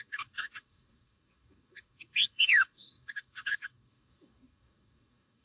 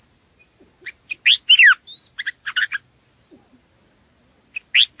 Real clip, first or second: second